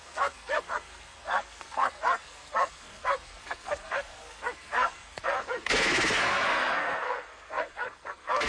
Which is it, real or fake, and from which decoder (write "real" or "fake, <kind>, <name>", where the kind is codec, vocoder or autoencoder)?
fake, codec, SNAC